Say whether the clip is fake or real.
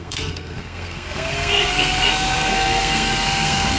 fake